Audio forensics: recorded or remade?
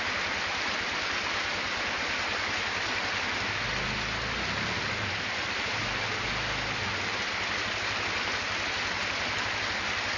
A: recorded